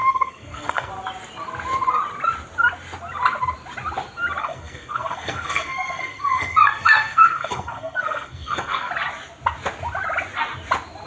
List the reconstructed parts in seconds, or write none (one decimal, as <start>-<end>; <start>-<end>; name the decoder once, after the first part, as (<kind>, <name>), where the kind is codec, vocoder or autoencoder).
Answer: 0.0-0.9 (codec, SNAC); 4.4-8.9